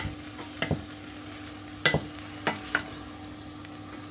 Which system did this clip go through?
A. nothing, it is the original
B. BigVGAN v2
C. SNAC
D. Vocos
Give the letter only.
A